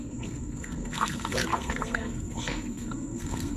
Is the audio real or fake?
fake